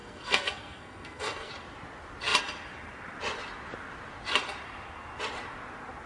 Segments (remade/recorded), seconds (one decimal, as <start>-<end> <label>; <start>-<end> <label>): 0.0-1.5 remade; 1.5-6.1 recorded

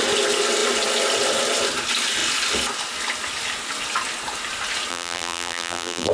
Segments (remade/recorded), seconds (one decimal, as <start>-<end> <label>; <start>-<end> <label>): 0.0-4.9 recorded; 4.9-6.1 remade

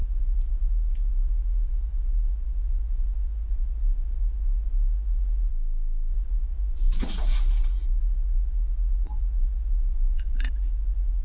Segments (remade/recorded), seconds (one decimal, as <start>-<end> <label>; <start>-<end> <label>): 0.0-5.5 remade; 5.5-6.1 recorded; 6.1-11.2 remade